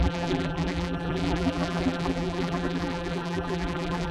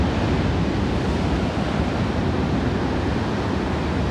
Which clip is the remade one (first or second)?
first